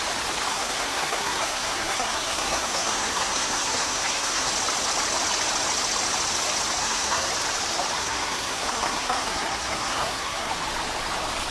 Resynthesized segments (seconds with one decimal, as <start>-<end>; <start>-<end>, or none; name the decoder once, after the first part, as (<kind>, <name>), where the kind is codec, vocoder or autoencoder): 0.5-4.5 (codec, SNAC); 6.8-7.3; 8.0-10.5